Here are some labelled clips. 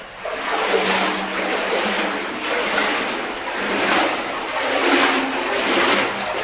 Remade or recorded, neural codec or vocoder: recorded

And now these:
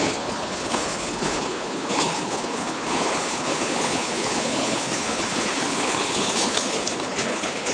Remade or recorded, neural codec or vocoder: remade, codec, HILCodec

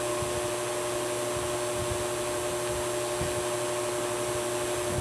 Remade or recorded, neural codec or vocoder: recorded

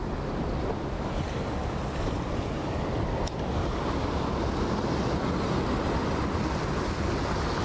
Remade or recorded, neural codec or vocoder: recorded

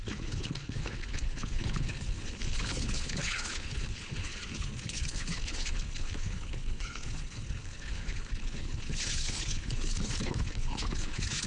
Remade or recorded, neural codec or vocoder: remade, codec, HILCodec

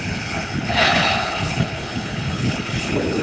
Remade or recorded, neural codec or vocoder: remade, codec, HILCodec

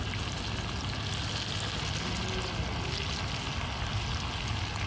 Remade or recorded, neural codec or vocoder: recorded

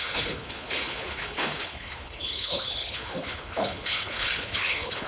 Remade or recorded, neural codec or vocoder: remade, codec, HILCodec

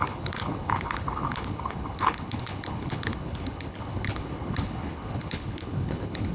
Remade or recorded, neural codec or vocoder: remade, codec, HILCodec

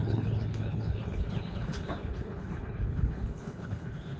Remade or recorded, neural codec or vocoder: remade, codec, HILCodec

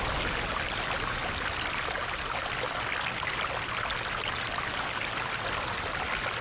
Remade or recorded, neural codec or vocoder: recorded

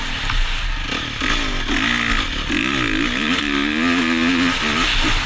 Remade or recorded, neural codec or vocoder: recorded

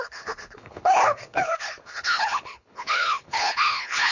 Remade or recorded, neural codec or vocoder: remade, codec, HILCodec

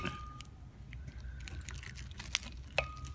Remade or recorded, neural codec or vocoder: recorded